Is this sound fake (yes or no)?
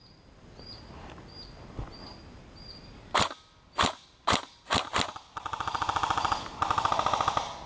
no